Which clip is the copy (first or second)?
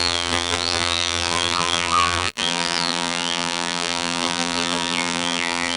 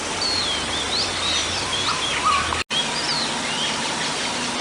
first